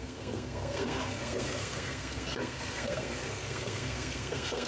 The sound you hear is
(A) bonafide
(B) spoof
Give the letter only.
B